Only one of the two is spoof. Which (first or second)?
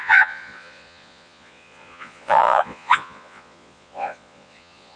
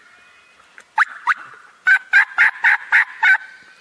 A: first